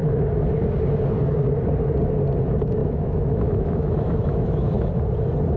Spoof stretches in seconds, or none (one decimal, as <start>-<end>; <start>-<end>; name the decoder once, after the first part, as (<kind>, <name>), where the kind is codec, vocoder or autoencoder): 2.8-4.9 (autoencoder, DAC-VAE)